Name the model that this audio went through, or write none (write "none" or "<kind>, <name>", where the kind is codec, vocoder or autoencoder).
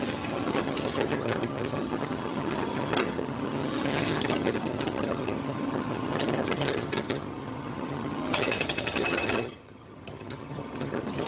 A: vocoder, HiFi-GAN